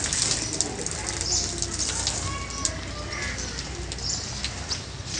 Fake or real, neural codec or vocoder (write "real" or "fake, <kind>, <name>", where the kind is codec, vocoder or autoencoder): real